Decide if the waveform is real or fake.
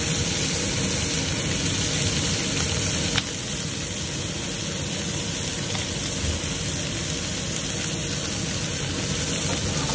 real